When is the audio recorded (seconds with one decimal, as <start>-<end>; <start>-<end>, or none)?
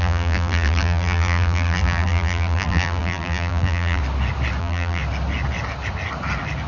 4.0-4.6; 5.0-6.7